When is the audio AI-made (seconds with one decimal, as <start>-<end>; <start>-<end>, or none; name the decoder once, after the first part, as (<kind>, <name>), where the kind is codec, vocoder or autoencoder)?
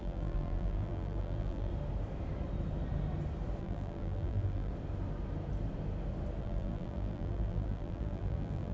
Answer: 0.0-1.7 (vocoder, BigVGAN v2); 3.6-4.7; 6.4-8.7